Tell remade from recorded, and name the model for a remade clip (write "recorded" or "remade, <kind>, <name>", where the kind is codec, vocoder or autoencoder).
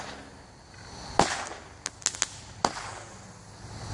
recorded